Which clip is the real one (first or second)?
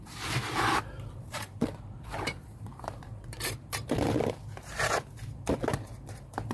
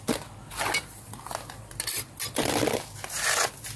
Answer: second